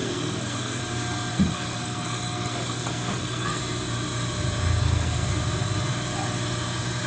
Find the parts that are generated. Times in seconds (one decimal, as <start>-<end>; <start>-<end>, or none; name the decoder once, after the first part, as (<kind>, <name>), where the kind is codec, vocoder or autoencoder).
0.0-0.8 (codec, SNAC); 1.3-3.6; 4.8-5.3

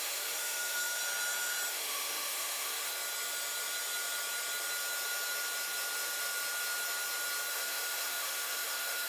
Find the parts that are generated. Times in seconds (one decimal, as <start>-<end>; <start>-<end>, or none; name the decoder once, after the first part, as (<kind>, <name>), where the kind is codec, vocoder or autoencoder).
0.0-1.0 (autoencoder, DAC-VAE); 1.7-2.9; 7.5-9.1

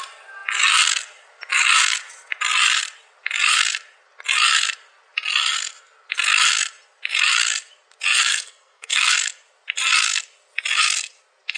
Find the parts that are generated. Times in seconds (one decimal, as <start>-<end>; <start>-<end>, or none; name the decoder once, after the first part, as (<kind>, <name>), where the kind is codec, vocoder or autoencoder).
8.3-9.1 (codec, SNAC)

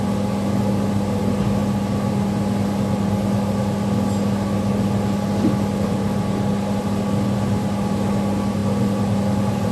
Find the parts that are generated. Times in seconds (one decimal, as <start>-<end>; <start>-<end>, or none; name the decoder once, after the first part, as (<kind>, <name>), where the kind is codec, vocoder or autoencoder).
none

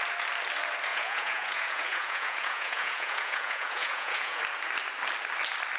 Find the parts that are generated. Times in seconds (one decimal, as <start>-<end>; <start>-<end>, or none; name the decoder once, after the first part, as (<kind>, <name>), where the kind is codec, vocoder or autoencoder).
0.9-4.4 (vocoder, Vocos)

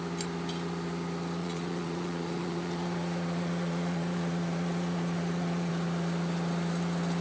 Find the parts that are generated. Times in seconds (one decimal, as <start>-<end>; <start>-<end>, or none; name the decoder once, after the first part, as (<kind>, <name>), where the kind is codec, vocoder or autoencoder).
1.4-5.7 (vocoder, Vocos)

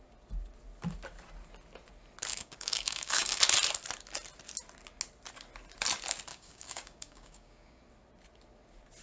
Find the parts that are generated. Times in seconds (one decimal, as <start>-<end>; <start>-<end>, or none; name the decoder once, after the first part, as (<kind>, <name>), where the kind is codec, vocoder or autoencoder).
2.3-3.4 (codec, DAC); 6.3-7.8

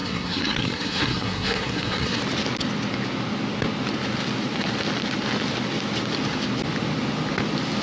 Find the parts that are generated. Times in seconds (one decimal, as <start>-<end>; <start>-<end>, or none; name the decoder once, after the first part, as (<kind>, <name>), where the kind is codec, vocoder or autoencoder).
0.0-2.2 (codec, SNAC)